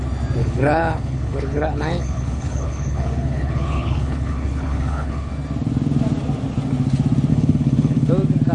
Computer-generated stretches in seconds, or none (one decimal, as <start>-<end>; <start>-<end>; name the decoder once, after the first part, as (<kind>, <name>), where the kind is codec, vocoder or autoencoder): 0.4-5.3 (codec, HILCodec); 7.3-8.1